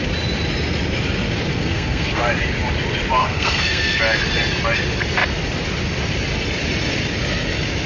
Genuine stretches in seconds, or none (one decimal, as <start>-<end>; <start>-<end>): 0.0-1.5; 2.2-3.2; 4.0-7.9